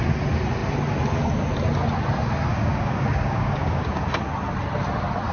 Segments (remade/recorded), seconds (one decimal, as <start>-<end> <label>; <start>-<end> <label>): 0.0-2.5 recorded; 2.5-4.2 remade; 4.2-5.3 recorded